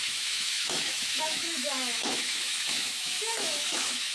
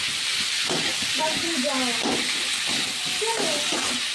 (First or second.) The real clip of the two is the second